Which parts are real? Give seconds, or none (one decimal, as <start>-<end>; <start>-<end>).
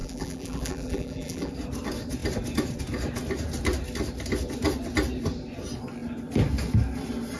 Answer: 1.5-7.4